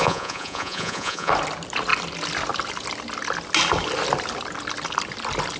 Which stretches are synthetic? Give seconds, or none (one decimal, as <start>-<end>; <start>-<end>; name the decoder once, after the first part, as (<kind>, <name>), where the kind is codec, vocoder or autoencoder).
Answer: 0.0-1.3 (vocoder, Vocos)